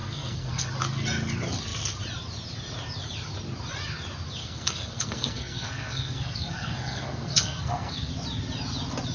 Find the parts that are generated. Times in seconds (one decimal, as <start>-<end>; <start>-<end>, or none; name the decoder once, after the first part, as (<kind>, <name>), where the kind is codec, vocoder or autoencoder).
0.0-0.7 (codec, SNAC); 4.4-8.1